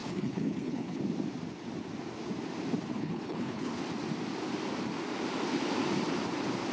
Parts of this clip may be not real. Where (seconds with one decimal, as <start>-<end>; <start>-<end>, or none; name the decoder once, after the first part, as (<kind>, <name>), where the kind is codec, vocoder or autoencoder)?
0.0-1.0 (codec, HILCodec); 2.9-3.8